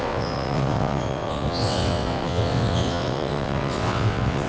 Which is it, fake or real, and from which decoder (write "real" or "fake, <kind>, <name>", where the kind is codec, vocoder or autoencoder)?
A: fake, vocoder, WaveNeXt